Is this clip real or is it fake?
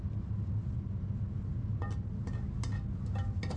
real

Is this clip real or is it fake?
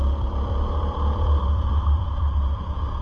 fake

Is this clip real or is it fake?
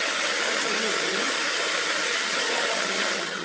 fake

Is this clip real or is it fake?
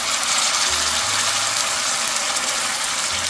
real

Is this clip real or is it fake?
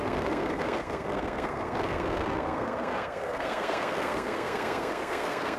fake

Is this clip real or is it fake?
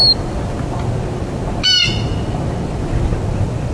real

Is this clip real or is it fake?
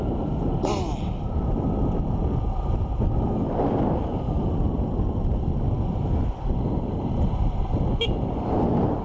real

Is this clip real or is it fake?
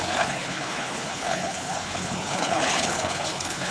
fake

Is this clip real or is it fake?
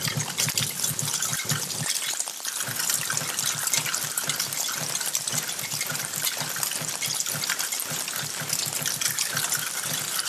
fake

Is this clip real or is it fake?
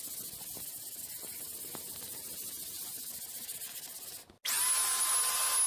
real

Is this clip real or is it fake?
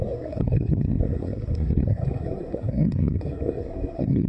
fake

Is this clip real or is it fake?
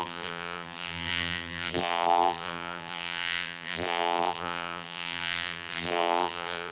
fake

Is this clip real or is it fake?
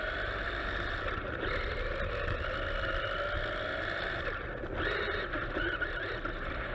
real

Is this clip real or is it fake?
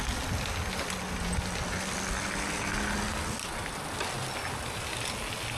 real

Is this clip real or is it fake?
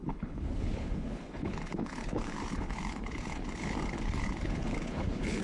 fake